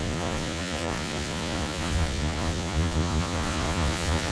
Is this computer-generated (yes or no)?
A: yes